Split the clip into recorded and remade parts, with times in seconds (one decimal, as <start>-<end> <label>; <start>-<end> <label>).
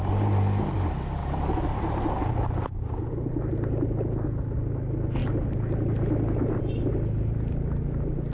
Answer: 0.0-8.3 recorded